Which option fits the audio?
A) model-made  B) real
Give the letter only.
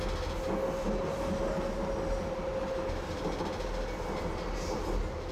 B